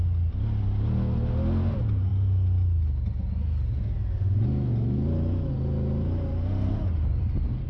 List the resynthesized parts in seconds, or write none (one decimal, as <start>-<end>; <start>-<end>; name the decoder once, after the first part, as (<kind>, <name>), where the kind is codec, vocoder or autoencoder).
none